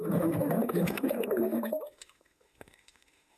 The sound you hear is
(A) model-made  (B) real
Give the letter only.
A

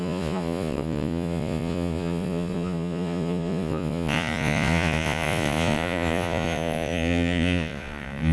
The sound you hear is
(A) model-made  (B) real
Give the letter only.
A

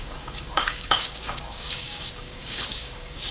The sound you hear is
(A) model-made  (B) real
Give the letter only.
A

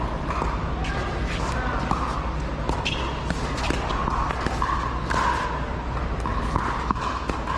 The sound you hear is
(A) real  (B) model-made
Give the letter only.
A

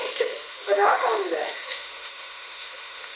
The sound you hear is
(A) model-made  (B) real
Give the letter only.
A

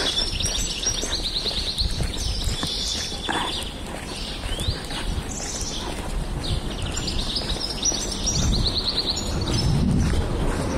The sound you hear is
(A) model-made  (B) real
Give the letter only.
B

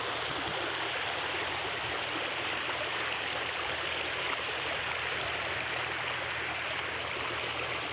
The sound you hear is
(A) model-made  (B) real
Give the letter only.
B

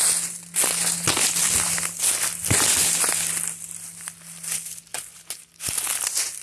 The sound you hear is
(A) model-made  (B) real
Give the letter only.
B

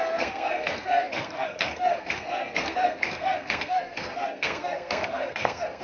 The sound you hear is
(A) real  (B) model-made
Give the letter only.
B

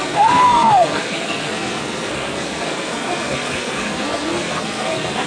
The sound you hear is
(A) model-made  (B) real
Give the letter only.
A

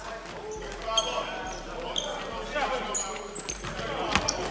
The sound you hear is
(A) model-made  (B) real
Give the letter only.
B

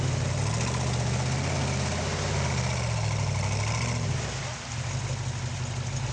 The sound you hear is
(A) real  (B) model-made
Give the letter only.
A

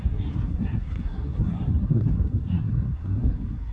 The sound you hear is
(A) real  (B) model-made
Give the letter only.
B